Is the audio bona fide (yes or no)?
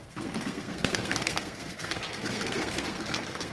no